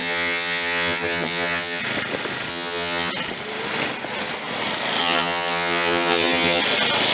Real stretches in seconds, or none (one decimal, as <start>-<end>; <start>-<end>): 1.8-2.5; 3.1-5.0; 6.6-7.1